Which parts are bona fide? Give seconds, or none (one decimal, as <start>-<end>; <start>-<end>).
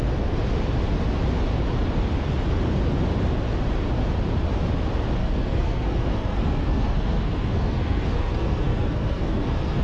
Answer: 0.0-5.2